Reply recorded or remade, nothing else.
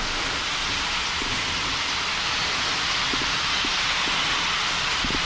recorded